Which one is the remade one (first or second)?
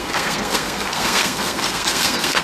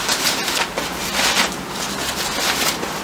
first